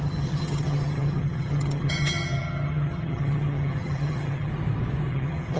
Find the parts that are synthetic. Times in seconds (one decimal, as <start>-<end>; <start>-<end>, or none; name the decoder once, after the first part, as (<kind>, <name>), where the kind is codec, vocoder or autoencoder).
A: 0.0-4.5 (vocoder, HiFi-GAN); 5.1-5.6